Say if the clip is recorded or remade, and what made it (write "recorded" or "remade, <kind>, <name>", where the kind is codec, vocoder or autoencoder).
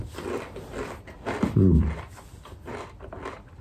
recorded